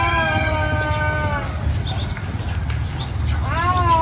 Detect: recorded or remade recorded